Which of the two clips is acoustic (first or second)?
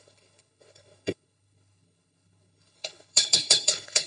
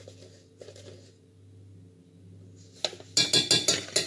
second